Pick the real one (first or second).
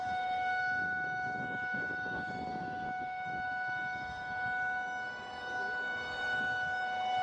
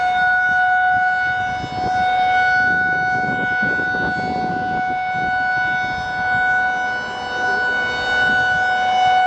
second